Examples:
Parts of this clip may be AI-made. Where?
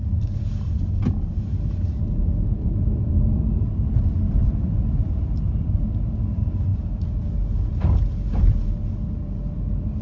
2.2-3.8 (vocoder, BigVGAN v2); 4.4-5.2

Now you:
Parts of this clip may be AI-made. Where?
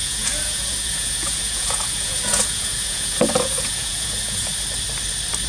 0.0-4.5 (vocoder, Vocos)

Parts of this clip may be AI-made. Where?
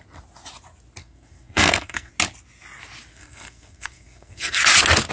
1.0-2.1 (codec, SNAC); 3.1-4.6